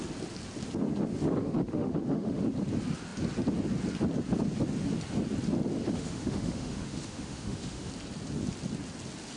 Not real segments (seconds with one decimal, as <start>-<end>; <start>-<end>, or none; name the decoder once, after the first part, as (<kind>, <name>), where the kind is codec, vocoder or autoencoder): 1.4-2.4 (autoencoder, DAC-VAE); 5.8-7.9